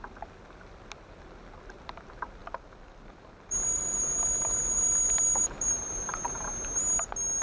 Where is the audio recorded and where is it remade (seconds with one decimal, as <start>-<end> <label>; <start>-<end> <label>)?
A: 0.0-2.4 recorded; 2.4-6.4 remade; 6.4-7.4 recorded